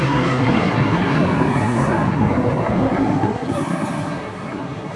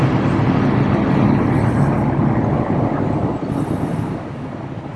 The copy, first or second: first